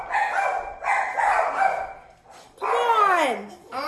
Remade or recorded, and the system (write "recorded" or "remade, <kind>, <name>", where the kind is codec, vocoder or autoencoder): recorded